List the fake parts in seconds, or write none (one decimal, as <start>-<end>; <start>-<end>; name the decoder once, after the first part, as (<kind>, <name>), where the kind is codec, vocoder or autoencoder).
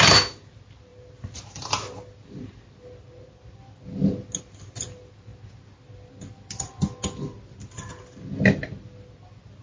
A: none